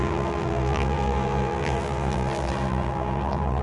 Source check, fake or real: fake